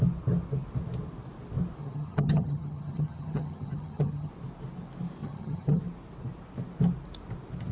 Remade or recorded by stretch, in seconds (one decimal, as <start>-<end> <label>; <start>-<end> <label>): 0.0-1.8 recorded; 1.8-4.3 remade; 4.3-5.2 recorded; 5.2-5.8 remade; 5.8-7.7 recorded